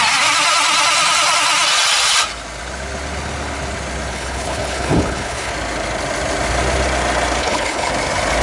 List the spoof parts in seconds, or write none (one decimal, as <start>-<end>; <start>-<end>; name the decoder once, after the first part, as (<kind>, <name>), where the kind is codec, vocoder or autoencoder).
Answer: 4.1-5.5 (codec, HILCodec); 7.4-7.9